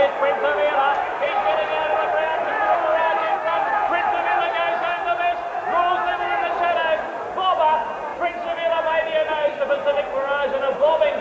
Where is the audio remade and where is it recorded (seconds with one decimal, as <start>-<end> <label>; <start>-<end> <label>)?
0.0-11.2 recorded